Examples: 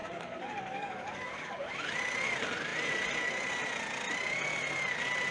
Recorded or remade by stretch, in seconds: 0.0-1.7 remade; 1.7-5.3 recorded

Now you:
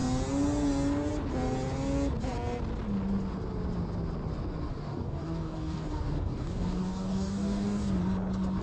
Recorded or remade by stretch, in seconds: 0.0-4.7 recorded; 4.7-8.0 remade; 8.0-8.6 recorded

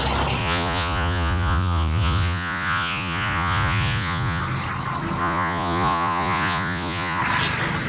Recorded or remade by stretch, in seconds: 0.0-0.4 recorded; 0.4-4.4 remade; 4.4-5.2 recorded; 5.2-7.2 remade; 7.2-7.9 recorded

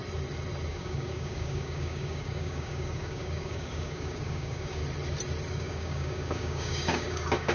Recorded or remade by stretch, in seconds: 0.0-0.7 recorded; 0.7-4.8 remade; 4.8-5.5 recorded; 5.5-7.5 remade

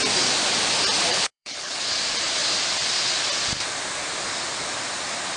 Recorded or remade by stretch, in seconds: 0.0-1.1 recorded; 1.1-1.8 remade; 1.8-5.4 recorded

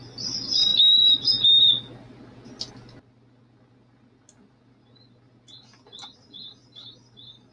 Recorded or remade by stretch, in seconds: 0.0-7.5 recorded